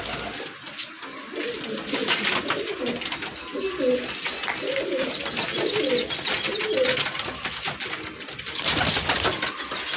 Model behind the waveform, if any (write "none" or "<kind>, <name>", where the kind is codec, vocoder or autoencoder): none